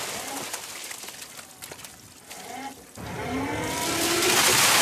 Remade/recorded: recorded